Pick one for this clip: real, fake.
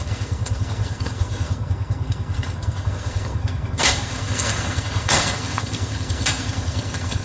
fake